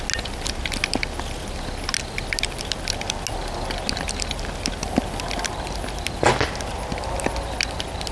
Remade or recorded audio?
recorded